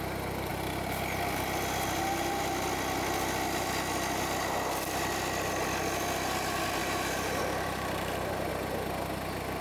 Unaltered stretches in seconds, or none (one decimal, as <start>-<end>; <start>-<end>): 0.0-6.8; 8.5-9.6